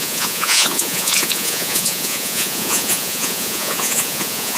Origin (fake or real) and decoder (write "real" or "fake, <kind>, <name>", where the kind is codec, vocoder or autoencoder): fake, vocoder, Vocos